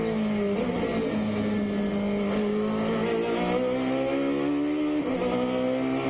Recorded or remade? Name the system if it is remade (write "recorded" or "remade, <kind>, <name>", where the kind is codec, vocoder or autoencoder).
recorded